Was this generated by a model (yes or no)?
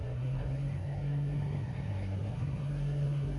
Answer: yes